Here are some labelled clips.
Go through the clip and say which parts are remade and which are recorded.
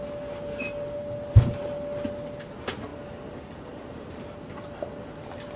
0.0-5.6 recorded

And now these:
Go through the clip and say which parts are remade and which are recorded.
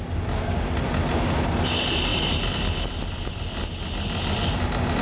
0.0-5.0 recorded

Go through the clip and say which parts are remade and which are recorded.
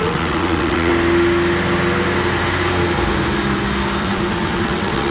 0.0-0.9 remade; 0.9-4.0 recorded; 4.0-5.1 remade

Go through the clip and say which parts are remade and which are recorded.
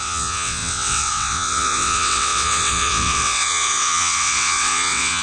0.0-5.2 remade